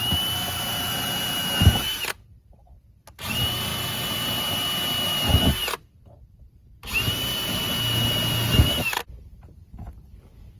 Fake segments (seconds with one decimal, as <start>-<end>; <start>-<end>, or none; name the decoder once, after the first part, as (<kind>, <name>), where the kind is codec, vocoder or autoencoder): none